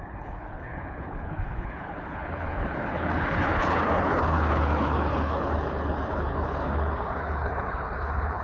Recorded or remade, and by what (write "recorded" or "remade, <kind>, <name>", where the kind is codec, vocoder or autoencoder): remade, codec, HILCodec